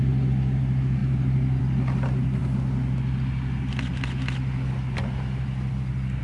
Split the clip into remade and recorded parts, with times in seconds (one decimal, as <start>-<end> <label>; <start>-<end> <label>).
0.0-6.2 recorded